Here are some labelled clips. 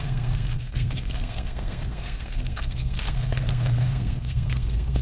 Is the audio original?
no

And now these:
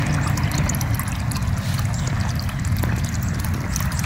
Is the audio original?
yes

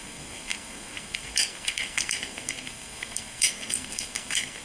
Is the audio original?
no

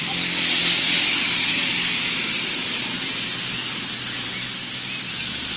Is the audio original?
yes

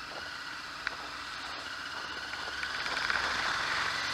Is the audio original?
yes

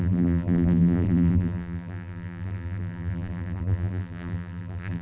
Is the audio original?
no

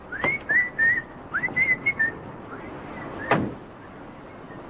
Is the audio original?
yes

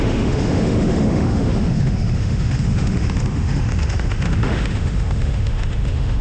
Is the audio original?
no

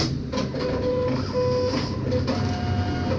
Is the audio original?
yes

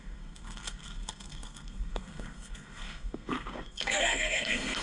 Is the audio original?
no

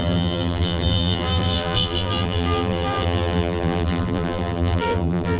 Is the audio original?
no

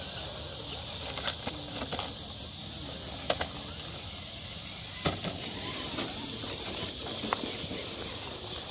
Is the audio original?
yes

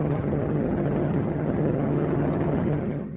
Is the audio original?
no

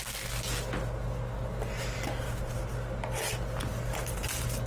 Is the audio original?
yes